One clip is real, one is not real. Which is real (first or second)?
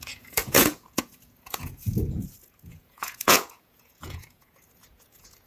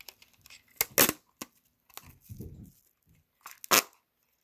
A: second